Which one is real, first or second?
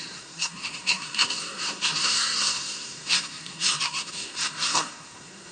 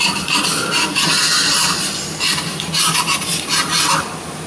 second